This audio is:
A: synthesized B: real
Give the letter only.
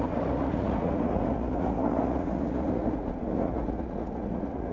A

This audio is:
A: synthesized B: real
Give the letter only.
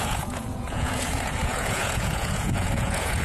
A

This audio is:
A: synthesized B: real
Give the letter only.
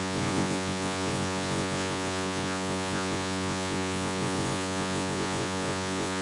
A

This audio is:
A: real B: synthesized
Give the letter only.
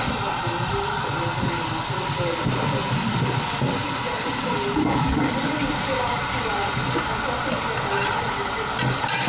A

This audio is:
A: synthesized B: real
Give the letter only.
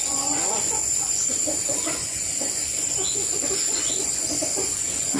A